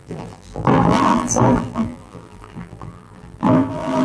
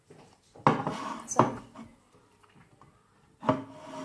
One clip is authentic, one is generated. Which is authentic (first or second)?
second